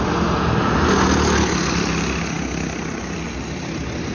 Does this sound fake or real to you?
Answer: real